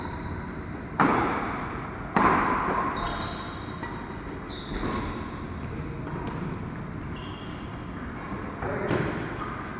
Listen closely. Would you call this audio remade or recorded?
recorded